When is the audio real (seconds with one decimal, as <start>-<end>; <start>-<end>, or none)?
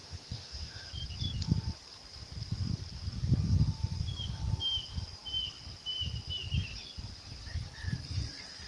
0.9-8.7